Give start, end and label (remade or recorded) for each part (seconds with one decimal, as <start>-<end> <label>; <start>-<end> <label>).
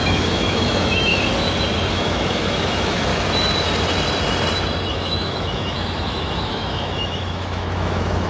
0.0-1.1 remade; 1.1-1.9 recorded; 1.9-3.1 remade; 3.1-4.9 recorded; 4.9-8.3 remade